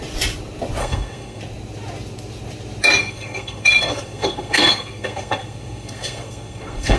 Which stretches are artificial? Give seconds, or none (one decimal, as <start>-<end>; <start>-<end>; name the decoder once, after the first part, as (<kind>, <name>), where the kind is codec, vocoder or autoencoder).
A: 0.8-1.4 (codec, SNAC); 3.0-7.0